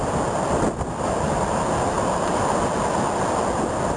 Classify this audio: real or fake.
real